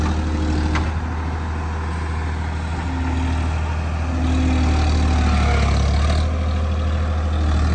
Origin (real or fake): real